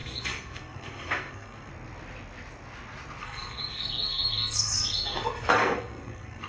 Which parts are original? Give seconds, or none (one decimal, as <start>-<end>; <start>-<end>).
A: 1.7-3.2